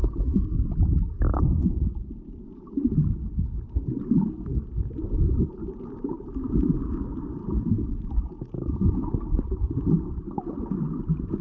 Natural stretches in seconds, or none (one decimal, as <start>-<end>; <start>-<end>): 0.0-11.4